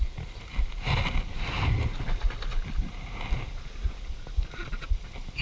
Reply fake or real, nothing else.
real